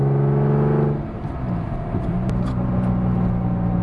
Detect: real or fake real